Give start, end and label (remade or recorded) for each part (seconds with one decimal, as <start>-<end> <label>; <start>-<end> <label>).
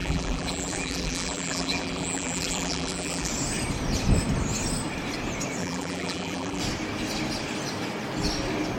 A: 0.0-3.3 remade; 3.3-5.6 recorded; 5.6-6.6 remade; 6.6-8.8 recorded